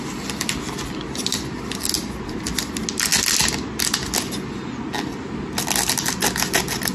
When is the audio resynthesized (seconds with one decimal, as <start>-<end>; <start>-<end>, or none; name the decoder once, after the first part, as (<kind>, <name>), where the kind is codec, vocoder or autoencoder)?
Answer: none